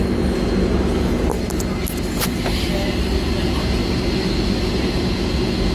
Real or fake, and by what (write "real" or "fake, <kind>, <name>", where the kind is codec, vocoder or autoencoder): real